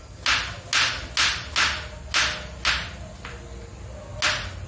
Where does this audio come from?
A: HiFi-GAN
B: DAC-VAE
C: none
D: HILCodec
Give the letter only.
C